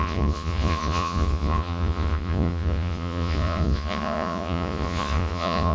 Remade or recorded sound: remade